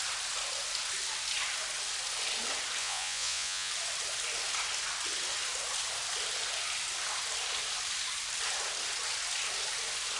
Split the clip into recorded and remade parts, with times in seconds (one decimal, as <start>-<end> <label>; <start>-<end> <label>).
0.0-2.8 recorded; 2.8-3.7 remade; 3.7-10.2 recorded